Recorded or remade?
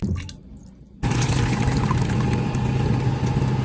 recorded